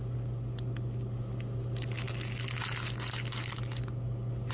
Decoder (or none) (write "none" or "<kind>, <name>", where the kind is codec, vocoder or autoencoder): none